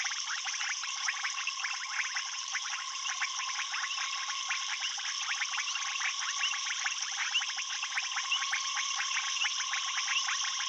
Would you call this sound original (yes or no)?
no